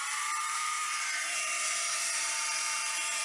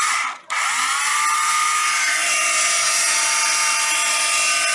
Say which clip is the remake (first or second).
first